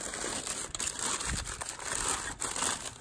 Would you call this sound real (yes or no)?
yes